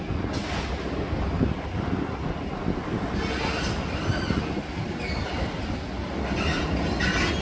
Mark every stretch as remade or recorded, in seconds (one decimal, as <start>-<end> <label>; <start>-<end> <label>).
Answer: 0.0-7.4 recorded